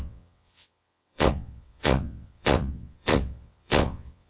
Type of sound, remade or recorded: remade